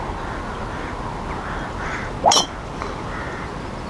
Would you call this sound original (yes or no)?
yes